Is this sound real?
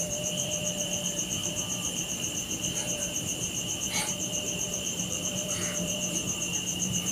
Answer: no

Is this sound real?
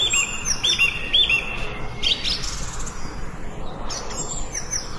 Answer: yes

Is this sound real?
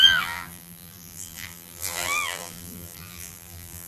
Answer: no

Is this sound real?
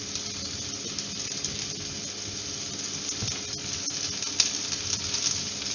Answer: yes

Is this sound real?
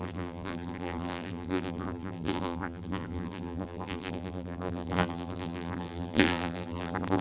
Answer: no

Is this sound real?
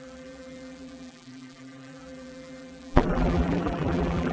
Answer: no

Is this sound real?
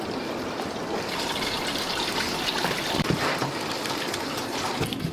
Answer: no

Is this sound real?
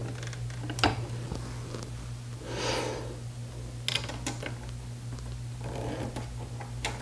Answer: yes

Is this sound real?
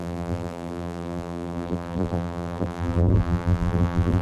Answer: no